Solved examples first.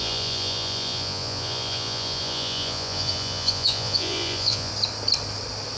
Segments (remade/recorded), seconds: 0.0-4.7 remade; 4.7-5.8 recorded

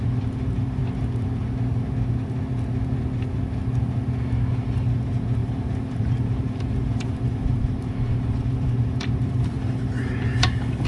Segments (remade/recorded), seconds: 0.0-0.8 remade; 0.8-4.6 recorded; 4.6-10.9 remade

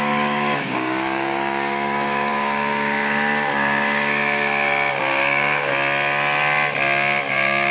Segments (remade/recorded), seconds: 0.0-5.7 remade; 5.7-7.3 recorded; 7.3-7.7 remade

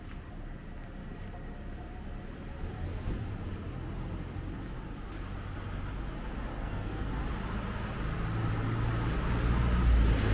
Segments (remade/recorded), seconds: 0.0-6.5 recorded; 6.5-7.1 remade; 7.1-10.3 recorded

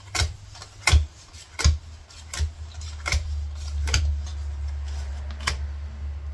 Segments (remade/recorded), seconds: 0.0-6.3 recorded

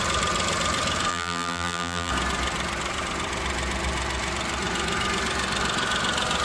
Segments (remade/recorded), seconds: 0.0-1.1 recorded; 1.1-2.1 remade; 2.1-6.4 recorded

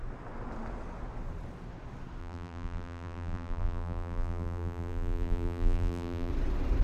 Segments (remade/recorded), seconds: 0.0-2.2 recorded; 2.2-6.3 remade; 6.3-6.8 recorded

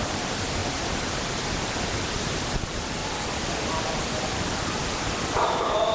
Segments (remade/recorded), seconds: 0.0-0.6 remade; 0.6-2.5 recorded; 2.5-3.0 remade; 3.0-3.7 recorded; 3.7-5.9 remade